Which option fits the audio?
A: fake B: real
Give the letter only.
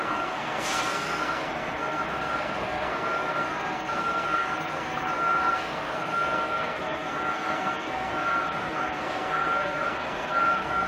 A